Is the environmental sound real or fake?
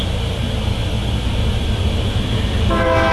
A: real